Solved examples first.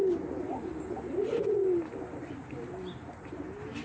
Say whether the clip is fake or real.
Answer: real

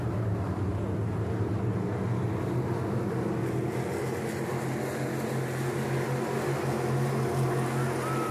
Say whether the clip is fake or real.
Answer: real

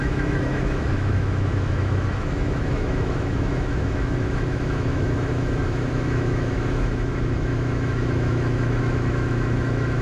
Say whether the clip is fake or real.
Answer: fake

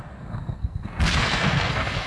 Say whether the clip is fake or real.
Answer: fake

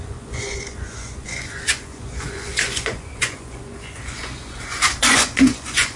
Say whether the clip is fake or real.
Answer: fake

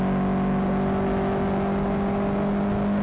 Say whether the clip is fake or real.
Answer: real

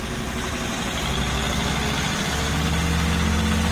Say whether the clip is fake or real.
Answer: real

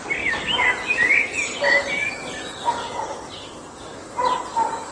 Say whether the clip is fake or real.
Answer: real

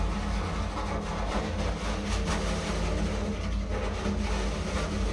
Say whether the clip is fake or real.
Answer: real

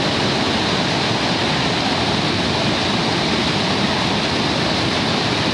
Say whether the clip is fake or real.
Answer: real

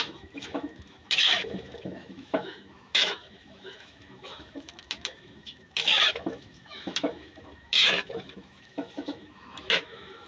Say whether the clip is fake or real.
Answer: fake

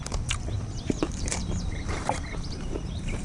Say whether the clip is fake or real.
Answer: fake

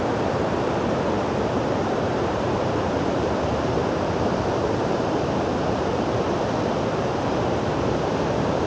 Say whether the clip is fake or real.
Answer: fake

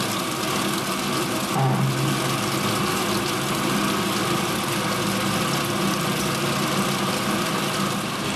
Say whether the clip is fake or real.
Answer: real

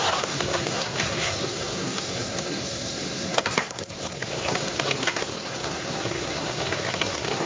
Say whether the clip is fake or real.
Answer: fake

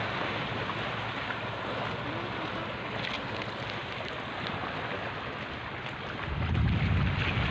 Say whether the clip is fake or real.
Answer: real